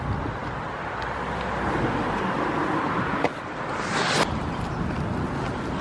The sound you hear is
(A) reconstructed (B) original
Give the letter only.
B